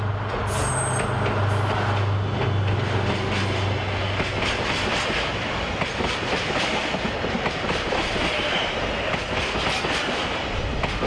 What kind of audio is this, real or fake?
real